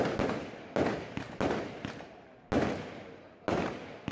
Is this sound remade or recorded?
recorded